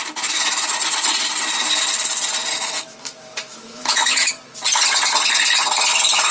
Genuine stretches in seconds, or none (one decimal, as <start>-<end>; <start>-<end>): 0.0-2.5; 4.3-6.3